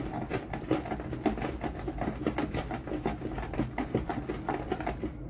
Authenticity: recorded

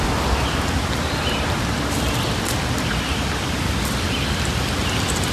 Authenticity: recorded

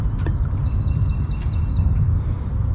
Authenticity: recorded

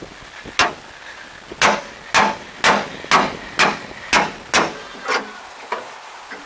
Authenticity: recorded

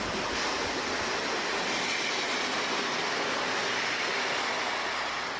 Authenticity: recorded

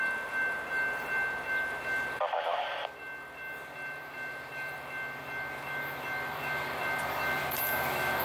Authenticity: recorded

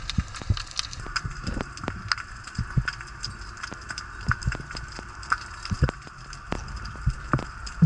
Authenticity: recorded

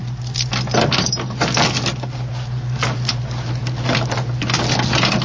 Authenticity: recorded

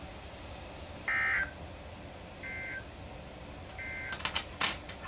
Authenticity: recorded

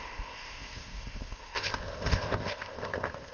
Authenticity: remade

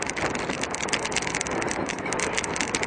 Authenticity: recorded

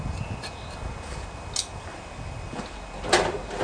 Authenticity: recorded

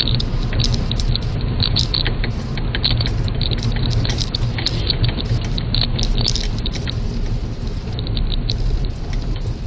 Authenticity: recorded